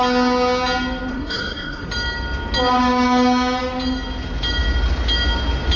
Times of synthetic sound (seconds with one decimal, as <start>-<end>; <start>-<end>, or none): 1.1-1.9